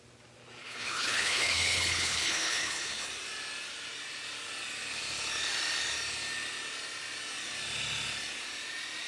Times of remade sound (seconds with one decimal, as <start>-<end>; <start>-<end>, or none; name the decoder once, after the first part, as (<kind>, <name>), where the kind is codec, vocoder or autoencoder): 0.6-3.1 (codec, HILCodec)